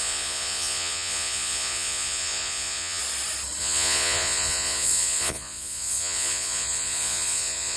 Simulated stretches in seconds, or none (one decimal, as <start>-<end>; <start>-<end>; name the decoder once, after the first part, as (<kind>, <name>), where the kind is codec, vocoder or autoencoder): 0.0-3.0 (vocoder, Vocos); 3.6-7.8